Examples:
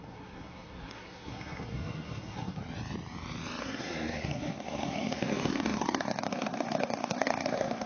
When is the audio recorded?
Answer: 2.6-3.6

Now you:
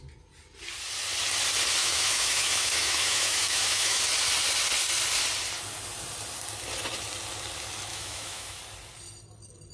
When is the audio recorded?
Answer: 0.0-1.8; 4.0-7.9; 8.6-9.7